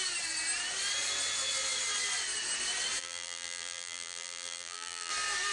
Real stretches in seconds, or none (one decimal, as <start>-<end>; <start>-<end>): 0.0-3.0; 5.1-5.5